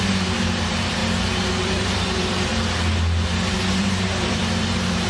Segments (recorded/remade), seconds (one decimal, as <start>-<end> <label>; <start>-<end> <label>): 0.0-1.0 remade; 1.0-1.6 recorded; 1.6-2.5 remade; 2.5-3.7 recorded; 3.7-5.1 remade

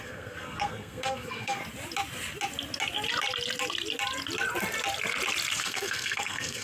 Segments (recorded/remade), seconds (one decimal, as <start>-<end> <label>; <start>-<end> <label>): 0.0-1.6 remade; 1.6-5.6 recorded; 5.6-6.6 remade

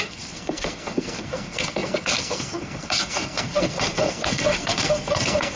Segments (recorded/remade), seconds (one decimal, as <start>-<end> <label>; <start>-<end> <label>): 0.0-5.6 remade